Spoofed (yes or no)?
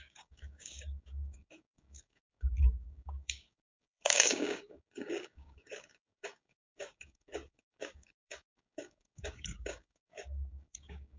yes